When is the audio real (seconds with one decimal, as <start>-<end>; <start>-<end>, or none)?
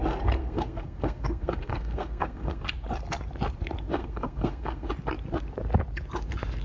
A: 0.0-0.4; 2.6-4.0; 4.9-6.6